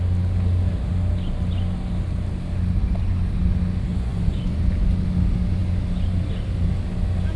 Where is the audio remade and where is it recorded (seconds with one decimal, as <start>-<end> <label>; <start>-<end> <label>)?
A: 0.0-3.9 recorded; 3.9-4.6 remade; 4.6-7.4 recorded